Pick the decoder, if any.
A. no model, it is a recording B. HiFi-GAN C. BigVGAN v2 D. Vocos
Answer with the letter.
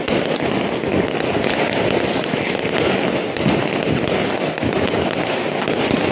A